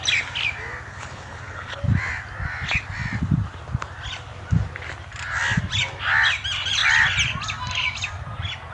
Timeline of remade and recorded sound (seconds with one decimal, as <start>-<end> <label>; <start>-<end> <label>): 0.0-0.9 recorded; 0.9-1.8 remade; 1.8-8.7 recorded

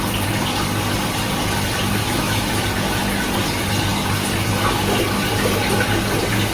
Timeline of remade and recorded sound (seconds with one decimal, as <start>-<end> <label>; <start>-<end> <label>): 0.0-2.0 recorded; 2.0-2.5 remade; 2.5-6.5 recorded

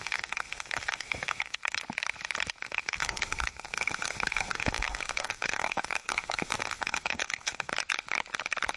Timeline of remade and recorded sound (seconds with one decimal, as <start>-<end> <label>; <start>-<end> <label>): 0.0-1.6 remade; 1.6-2.6 recorded; 2.6-7.7 remade; 7.7-8.8 recorded

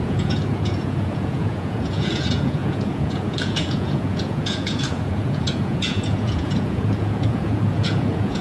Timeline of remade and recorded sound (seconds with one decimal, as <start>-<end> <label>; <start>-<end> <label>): 0.0-8.4 remade

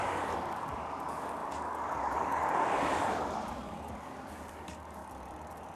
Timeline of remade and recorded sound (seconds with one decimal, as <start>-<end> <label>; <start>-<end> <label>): 0.0-5.0 remade; 5.0-5.8 recorded

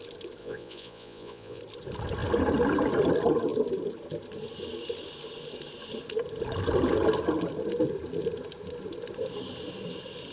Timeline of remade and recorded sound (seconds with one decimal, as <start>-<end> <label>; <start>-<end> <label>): 0.0-0.4 recorded; 0.4-1.6 remade; 1.6-10.3 recorded

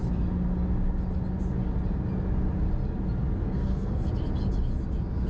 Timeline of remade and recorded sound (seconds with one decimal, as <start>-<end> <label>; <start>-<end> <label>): 0.0-3.4 recorded; 3.4-4.1 remade; 4.1-5.3 recorded